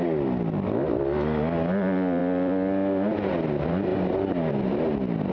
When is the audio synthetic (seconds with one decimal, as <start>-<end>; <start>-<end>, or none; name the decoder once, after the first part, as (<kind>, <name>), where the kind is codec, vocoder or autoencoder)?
none